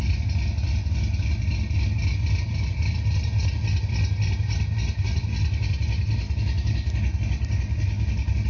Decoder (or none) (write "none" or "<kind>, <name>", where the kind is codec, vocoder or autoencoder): none